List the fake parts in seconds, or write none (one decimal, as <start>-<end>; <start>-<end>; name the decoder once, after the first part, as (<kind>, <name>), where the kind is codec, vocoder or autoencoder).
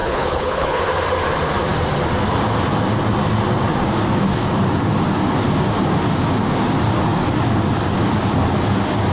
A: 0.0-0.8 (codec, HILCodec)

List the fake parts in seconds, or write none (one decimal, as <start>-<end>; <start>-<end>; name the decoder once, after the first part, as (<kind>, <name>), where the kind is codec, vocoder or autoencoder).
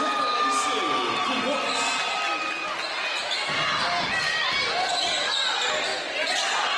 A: none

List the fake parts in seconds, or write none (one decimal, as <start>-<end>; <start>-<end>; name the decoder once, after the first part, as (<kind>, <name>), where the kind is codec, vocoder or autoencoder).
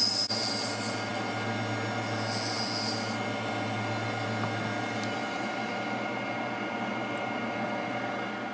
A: none